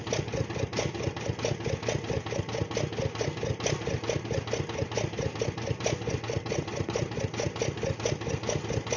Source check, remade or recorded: recorded